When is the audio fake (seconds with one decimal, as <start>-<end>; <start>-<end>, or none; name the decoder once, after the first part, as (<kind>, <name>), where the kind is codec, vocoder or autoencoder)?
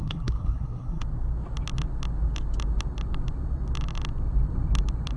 0.0-1.0 (codec, SNAC)